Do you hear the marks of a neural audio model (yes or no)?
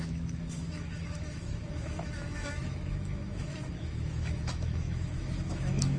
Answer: yes